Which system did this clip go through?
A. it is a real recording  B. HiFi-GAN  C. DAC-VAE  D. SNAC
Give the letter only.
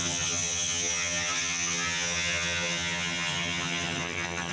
B